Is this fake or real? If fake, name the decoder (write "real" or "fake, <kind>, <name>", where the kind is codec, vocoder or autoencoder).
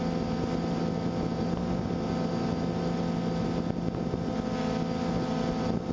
real